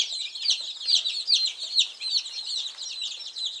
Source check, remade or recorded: recorded